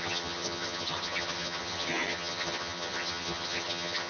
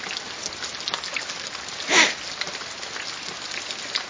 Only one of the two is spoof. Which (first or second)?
first